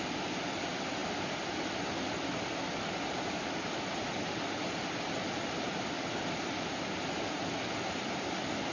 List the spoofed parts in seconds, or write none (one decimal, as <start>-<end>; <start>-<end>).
none